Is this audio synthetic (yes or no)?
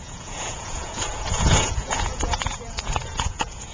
yes